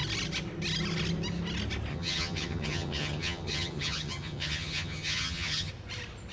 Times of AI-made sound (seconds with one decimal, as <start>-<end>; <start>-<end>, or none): 1.9-5.7